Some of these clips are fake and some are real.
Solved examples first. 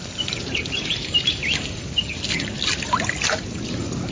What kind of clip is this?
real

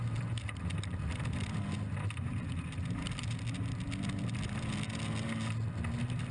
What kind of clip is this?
real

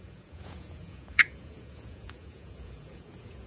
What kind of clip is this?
fake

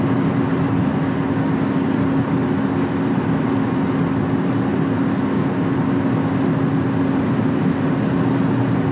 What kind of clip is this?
real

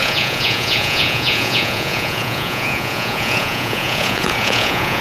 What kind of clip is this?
fake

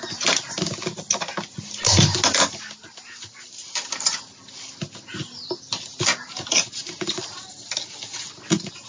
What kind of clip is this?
real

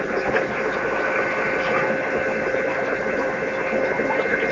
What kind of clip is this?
real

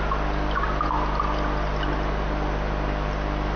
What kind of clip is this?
real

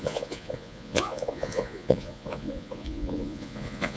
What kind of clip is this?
fake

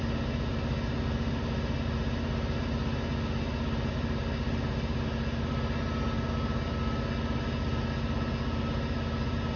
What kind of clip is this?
real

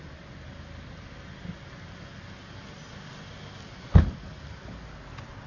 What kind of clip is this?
real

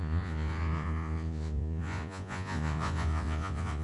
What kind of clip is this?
fake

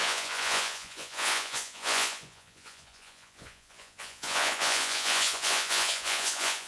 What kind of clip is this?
fake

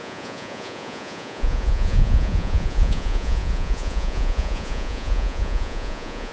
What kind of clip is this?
fake